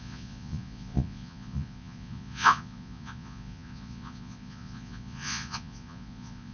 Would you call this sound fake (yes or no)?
yes